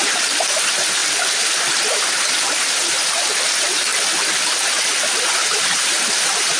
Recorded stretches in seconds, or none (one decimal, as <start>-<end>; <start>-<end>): 1.0-1.7; 3.9-5.2